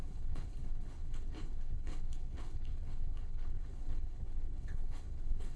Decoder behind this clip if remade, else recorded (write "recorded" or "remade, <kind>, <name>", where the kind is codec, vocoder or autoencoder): remade, codec, HILCodec